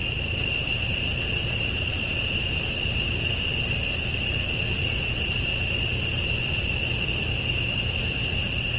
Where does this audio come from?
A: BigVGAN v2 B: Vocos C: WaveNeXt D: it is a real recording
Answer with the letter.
D